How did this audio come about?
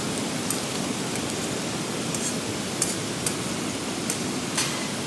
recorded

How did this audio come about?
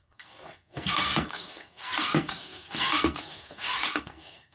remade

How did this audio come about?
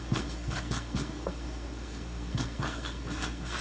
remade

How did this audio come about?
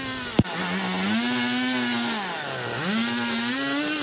recorded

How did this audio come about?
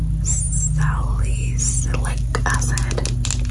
recorded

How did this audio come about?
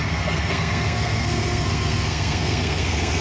remade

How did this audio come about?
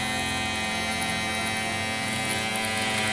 recorded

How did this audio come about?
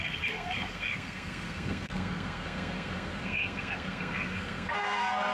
remade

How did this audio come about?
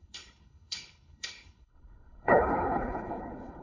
remade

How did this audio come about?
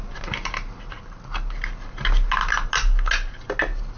recorded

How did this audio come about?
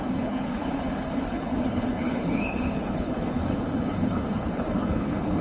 remade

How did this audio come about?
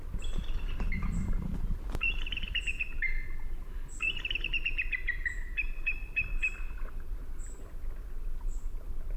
recorded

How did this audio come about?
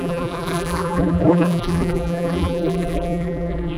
remade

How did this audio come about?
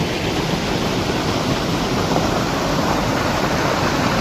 recorded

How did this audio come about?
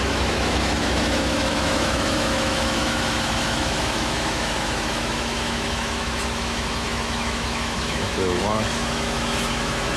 remade